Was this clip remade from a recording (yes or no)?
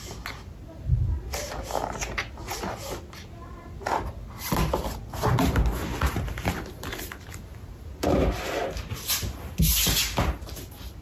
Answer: no